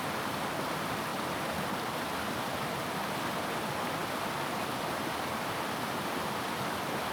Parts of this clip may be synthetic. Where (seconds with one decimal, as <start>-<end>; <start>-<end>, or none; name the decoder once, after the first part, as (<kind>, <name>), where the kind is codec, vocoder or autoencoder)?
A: 4.0-6.3 (vocoder, BigVGAN v2)